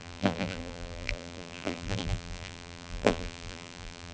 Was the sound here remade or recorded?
remade